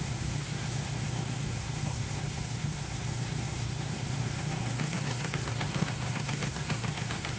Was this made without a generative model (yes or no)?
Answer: no